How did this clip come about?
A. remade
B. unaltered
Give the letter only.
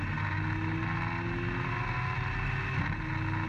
B